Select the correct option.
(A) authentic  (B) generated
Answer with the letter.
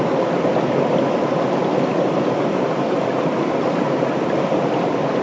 A